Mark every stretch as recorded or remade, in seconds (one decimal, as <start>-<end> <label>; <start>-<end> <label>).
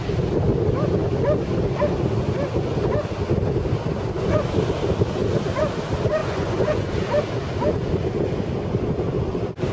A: 0.0-6.2 recorded; 6.2-6.9 remade; 6.9-9.7 recorded